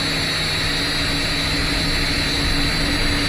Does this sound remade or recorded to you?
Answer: recorded